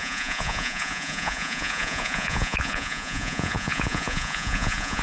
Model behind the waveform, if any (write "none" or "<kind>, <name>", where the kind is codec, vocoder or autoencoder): vocoder, Vocos